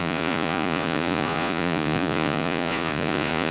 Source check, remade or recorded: remade